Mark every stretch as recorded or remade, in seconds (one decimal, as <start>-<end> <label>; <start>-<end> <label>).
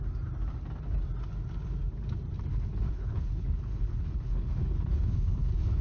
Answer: 0.0-2.5 recorded; 2.5-5.8 remade